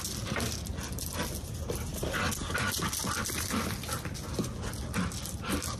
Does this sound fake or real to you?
real